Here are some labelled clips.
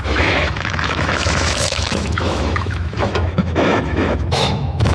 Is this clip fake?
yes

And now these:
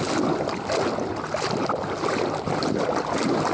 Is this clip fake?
no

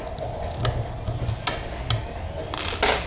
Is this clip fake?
no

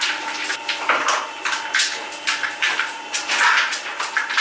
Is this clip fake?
no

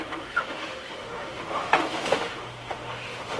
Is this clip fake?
yes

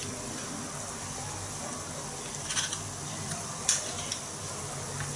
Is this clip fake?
no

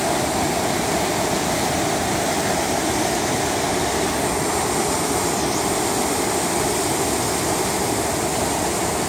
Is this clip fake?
no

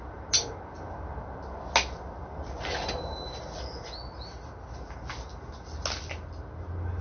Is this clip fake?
no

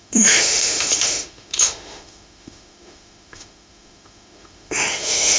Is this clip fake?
yes